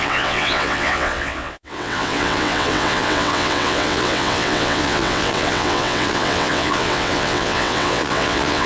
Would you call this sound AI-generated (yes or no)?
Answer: yes